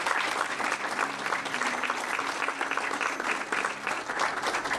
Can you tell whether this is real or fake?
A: real